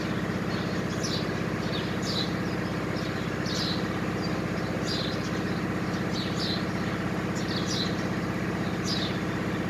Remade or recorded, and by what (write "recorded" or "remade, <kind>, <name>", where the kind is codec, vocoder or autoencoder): recorded